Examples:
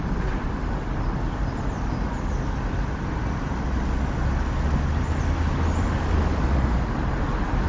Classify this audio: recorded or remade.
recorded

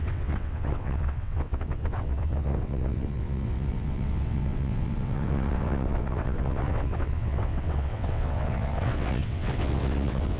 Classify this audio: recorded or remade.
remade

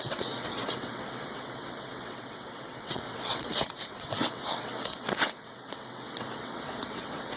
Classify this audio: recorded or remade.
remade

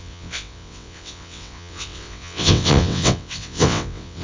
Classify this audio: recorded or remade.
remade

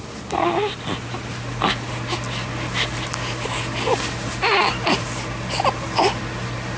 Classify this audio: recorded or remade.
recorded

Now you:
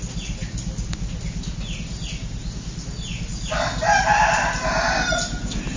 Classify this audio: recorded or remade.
recorded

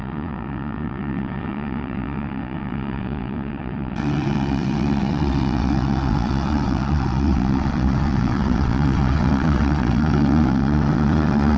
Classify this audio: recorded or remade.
remade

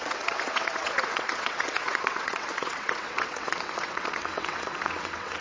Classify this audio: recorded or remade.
remade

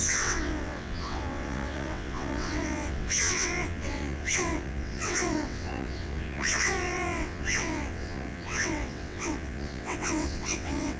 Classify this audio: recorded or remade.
remade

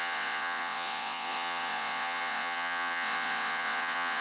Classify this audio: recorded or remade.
remade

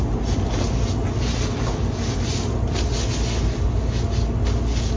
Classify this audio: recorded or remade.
recorded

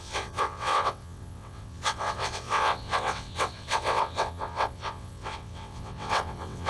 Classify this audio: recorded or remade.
remade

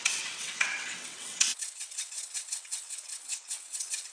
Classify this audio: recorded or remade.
remade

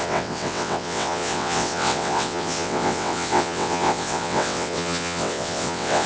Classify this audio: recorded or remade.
remade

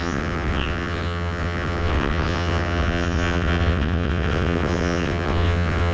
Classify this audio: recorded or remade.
remade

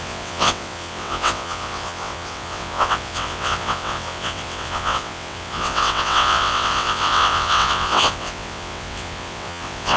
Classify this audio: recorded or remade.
remade